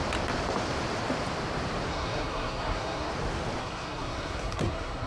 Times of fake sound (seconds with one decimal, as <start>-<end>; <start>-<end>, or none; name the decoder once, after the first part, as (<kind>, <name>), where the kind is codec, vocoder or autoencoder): 1.9-3.1 (codec, SNAC); 3.6-5.1